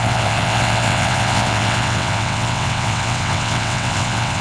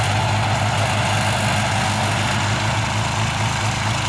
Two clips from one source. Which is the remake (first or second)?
first